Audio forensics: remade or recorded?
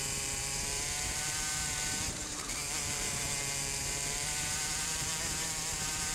remade